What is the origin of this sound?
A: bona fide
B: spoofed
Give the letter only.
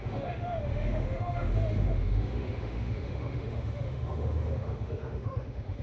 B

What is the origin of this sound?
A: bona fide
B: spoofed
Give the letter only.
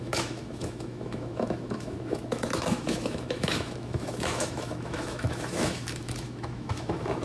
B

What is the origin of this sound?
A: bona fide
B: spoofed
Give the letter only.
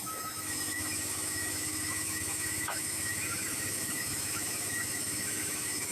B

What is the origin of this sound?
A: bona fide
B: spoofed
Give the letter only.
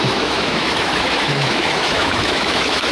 B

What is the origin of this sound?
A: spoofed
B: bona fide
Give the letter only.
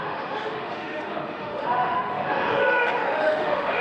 A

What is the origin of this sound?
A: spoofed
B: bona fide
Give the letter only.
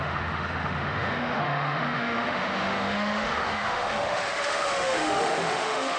A